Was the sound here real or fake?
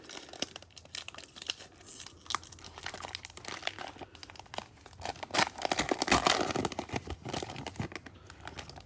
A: real